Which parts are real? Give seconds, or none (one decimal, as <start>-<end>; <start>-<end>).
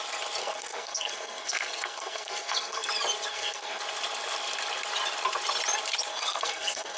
0.0-0.4; 2.9-3.3; 3.8-6.1